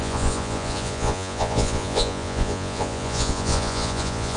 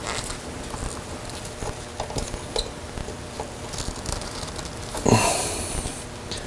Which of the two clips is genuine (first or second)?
second